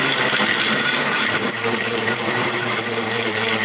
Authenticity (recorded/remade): remade